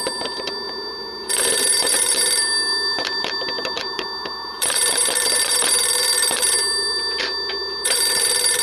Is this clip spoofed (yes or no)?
yes